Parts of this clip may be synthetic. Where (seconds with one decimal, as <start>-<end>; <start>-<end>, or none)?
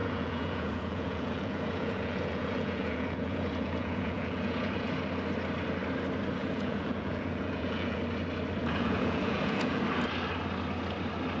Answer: 0.0-4.9; 6.4-8.0; 8.6-9.8